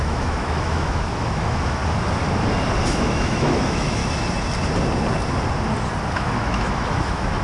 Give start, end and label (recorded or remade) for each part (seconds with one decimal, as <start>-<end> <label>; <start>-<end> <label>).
0.0-1.8 remade; 1.8-2.8 recorded; 2.8-4.0 remade; 4.0-6.1 recorded; 6.1-7.4 remade